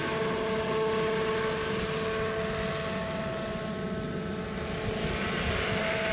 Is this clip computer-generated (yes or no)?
no